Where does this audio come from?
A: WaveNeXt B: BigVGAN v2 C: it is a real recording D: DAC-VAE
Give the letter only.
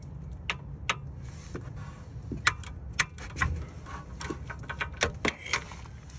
C